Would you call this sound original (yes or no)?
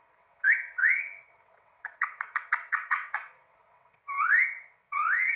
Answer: no